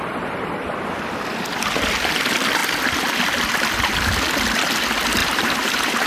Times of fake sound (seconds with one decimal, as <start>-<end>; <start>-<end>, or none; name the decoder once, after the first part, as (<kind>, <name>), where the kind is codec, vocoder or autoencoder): 5.2-6.1 (vocoder, BigVGAN v2)